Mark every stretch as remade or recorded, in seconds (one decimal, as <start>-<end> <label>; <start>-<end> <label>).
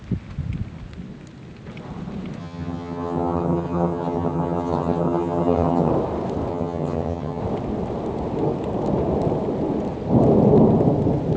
0.0-2.4 recorded; 2.4-5.9 remade; 5.9-6.5 recorded; 6.5-7.4 remade; 7.4-11.4 recorded